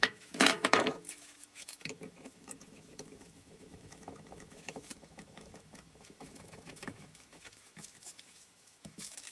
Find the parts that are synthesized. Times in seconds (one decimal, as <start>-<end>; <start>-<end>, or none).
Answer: 0.0-9.3